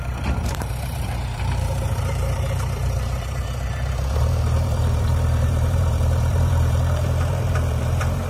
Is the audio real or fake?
fake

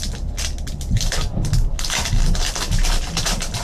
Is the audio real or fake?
real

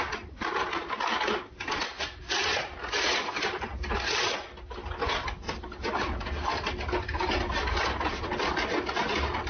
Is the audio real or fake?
real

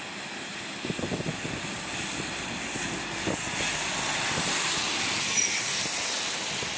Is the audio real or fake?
real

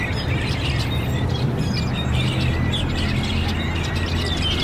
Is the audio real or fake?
real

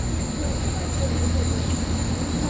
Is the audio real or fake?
real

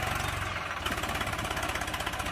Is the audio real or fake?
real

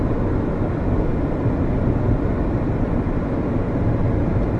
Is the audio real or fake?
real